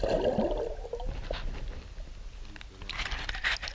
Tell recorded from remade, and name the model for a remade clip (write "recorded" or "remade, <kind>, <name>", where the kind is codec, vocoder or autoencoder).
recorded